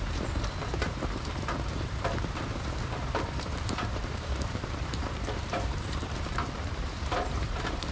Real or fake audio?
fake